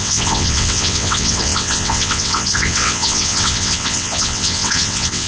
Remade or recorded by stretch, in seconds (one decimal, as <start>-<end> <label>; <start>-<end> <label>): 0.0-5.3 remade